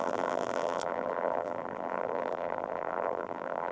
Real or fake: fake